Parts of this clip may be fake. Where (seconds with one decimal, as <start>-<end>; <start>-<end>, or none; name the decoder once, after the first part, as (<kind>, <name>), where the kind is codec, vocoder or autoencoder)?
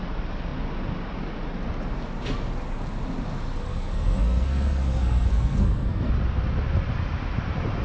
3.7-6.1 (codec, SNAC)